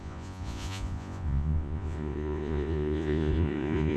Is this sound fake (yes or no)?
yes